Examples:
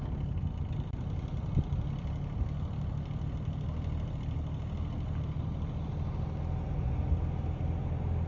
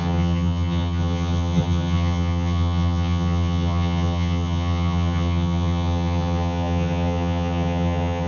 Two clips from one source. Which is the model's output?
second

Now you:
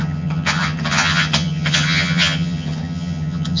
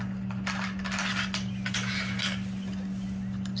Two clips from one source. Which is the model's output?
first